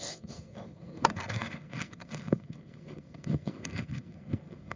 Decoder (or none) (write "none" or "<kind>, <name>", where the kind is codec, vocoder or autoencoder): codec, SNAC